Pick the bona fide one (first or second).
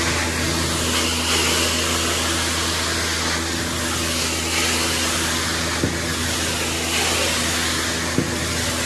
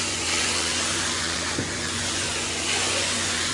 first